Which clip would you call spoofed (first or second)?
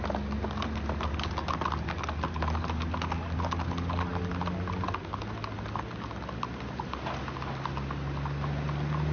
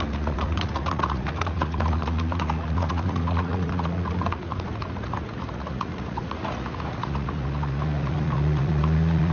second